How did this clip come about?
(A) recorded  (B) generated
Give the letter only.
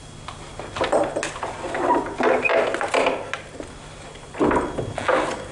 A